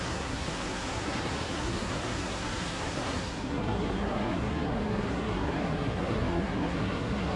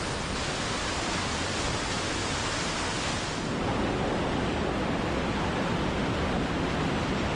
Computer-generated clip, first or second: first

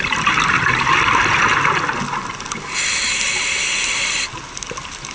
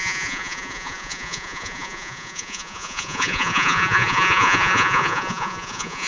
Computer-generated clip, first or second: second